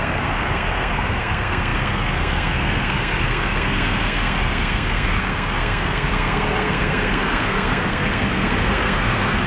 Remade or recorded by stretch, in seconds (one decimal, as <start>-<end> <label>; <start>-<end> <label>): 0.0-9.5 remade